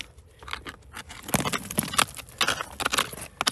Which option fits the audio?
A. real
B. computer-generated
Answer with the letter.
A